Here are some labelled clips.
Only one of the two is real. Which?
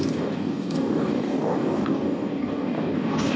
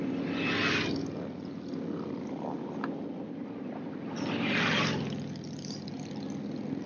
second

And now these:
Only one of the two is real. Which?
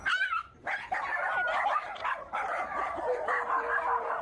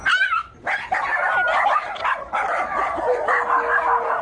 second